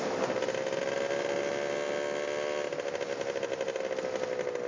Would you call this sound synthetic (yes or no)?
no